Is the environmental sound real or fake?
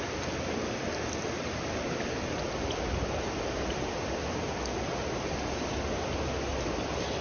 real